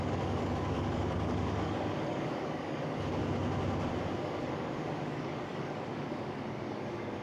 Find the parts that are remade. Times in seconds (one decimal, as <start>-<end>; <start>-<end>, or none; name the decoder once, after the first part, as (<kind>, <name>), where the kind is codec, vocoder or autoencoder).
0.0-3.2 (codec, DAC); 4.2-7.2